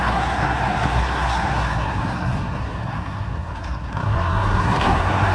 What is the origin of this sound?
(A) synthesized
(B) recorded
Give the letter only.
A